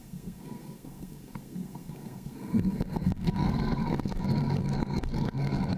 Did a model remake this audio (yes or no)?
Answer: yes